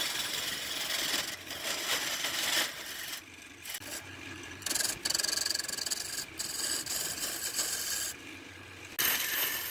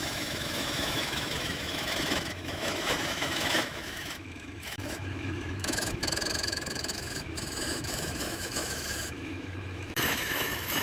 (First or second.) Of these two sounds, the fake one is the second